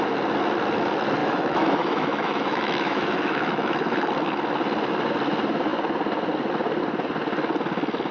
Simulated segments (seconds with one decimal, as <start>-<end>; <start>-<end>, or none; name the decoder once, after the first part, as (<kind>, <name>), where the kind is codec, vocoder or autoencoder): 1.2-4.1 (autoencoder, DAC-VAE)